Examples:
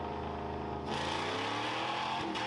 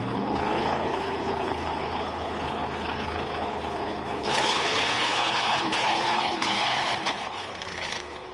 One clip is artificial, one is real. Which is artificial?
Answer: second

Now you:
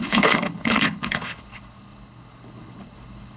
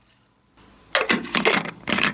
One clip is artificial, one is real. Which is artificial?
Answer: first